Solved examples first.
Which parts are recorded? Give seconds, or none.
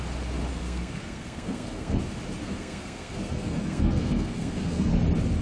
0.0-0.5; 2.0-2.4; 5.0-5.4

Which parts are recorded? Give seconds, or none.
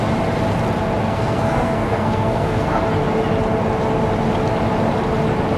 0.0-1.0; 2.8-5.6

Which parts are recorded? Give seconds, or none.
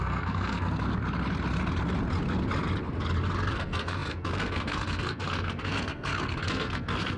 0.9-3.5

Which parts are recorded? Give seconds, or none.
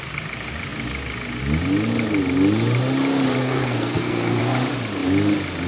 0.0-3.4; 4.4-5.7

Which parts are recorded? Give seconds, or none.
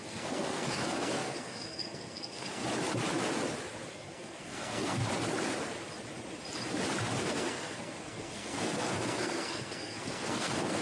2.6-3.9; 5.0-7.2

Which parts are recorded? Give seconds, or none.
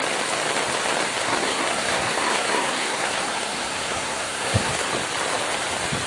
0.0-1.2; 4.9-6.1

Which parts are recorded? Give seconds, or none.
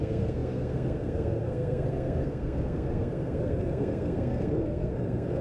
none